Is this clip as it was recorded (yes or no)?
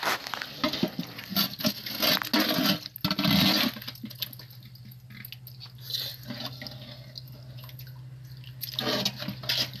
yes